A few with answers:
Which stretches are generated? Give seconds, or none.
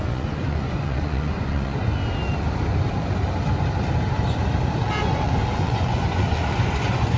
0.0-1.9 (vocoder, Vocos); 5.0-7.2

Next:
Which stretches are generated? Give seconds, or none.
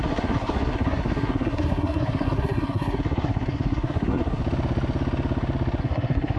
0.0-4.4 (codec, SNAC); 5.8-6.4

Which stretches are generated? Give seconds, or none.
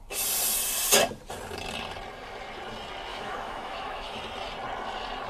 3.1-4.2 (autoencoder, DAC-VAE)